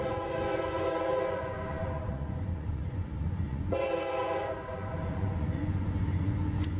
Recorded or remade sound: remade